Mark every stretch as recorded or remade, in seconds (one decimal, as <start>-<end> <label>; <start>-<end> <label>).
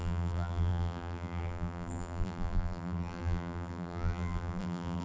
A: 0.0-5.0 remade